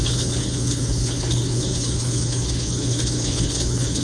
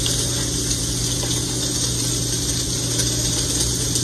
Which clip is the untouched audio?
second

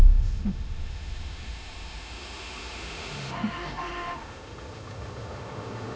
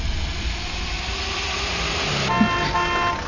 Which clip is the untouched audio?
second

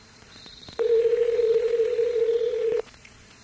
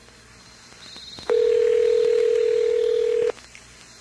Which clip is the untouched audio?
second